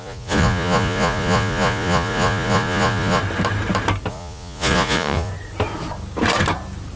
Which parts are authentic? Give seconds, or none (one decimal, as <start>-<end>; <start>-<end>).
3.2-4.1; 5.3-7.0

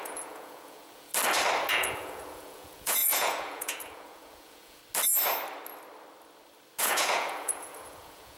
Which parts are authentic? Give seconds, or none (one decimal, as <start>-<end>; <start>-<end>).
1.1-1.7; 4.8-6.8

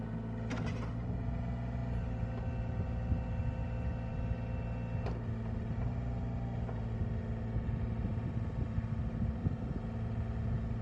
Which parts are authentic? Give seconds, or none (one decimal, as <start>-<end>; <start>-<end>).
0.0-10.8